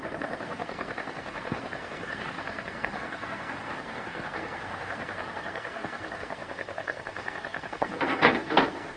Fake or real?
fake